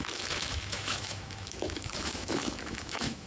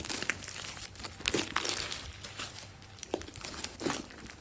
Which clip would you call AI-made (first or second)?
first